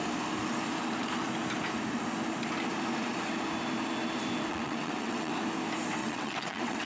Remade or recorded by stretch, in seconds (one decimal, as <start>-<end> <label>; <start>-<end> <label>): 0.0-4.5 recorded; 4.5-5.3 remade; 5.3-6.0 recorded; 6.0-6.9 remade